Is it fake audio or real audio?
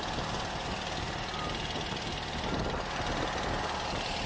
real